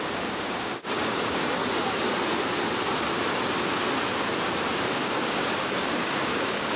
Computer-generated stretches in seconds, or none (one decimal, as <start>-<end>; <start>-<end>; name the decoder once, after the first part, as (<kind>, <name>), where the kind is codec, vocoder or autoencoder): 0.0-1.6 (codec, DAC); 4.9-6.8